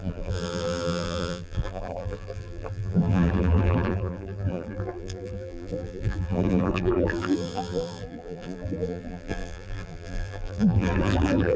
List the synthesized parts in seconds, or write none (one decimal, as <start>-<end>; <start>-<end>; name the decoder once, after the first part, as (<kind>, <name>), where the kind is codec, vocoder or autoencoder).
0.0-11.6 (vocoder, BigVGAN v2)